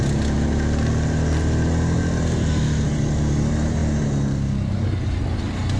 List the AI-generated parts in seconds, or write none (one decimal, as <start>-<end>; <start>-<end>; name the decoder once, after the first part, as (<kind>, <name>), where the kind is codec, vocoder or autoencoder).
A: none